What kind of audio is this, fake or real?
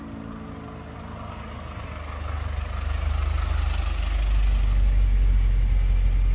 real